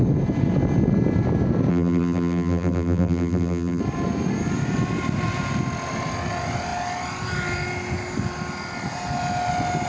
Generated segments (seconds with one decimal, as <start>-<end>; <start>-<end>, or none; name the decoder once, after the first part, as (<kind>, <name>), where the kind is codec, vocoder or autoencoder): 1.7-3.8 (vocoder, BigVGAN v2)